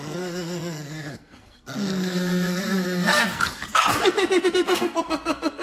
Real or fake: fake